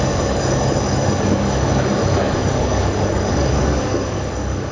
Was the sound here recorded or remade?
remade